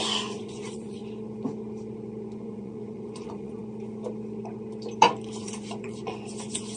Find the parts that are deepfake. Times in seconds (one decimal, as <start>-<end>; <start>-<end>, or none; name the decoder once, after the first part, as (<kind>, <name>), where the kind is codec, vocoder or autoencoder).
0.0-1.0 (vocoder, Vocos); 2.4-3.6; 5.4-6.8